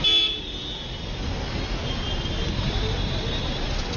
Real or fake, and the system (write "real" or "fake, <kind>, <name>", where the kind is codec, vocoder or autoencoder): real